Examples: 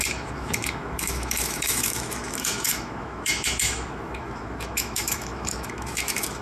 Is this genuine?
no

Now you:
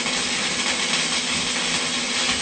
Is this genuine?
yes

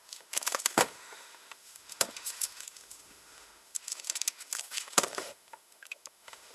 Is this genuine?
no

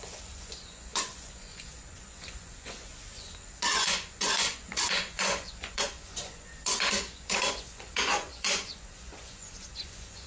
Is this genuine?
no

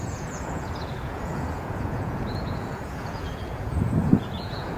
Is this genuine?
no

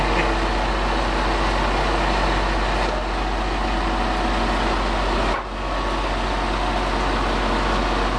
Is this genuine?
yes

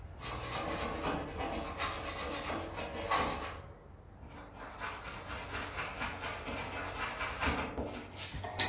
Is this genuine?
yes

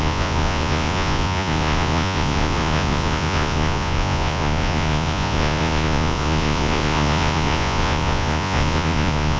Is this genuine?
no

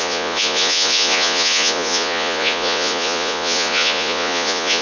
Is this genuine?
no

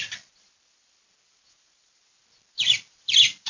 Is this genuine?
yes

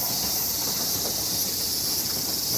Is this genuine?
yes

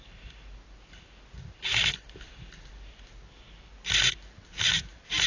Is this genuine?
yes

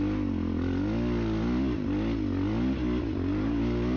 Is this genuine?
yes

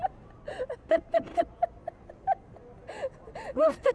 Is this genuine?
yes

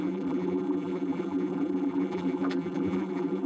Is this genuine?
no